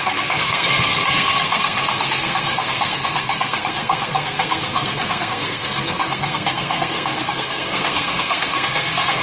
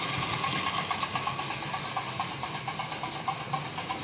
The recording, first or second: second